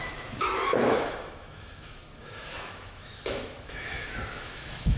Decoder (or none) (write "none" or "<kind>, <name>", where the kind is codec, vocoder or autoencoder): autoencoder, DAC-VAE